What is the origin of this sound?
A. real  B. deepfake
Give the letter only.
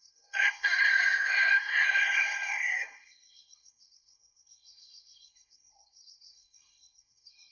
B